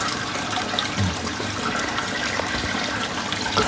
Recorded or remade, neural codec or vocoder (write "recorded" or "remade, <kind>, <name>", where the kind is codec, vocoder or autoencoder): recorded